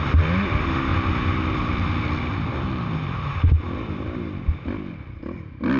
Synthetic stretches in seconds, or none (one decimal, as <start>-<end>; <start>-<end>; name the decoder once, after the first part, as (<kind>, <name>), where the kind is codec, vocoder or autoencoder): none

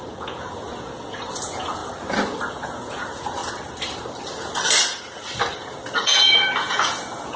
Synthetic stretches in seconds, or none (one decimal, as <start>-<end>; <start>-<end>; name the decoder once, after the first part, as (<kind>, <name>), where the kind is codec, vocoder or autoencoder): 0.0-1.8 (vocoder, Vocos); 2.5-3.4; 6.0-7.4

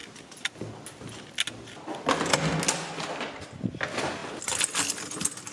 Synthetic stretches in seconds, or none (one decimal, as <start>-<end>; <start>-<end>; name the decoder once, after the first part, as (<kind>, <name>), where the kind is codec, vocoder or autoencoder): none

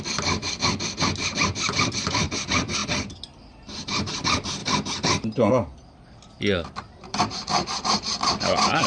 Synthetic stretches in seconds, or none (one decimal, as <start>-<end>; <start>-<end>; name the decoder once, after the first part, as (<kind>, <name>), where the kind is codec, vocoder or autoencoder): 0.0-8.9 (vocoder, BigVGAN v2)

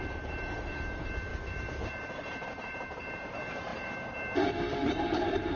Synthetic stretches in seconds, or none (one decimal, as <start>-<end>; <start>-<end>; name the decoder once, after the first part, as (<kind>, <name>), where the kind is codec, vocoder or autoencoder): 0.0-5.6 (vocoder, BigVGAN v2)

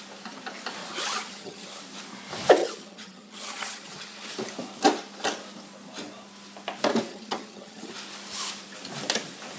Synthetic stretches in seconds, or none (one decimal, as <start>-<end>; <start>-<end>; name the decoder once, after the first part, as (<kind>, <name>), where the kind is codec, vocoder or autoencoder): 0.8-1.8 (vocoder, HiFi-GAN); 2.6-4.3; 7.1-7.9

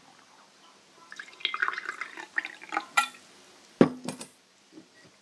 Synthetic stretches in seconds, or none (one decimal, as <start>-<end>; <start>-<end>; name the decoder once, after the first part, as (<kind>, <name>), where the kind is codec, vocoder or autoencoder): none

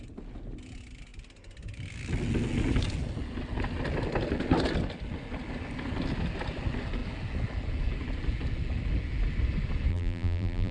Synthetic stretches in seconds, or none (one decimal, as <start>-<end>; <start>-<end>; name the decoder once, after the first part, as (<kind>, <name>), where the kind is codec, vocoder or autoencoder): 9.9-10.7 (vocoder, BigVGAN v2)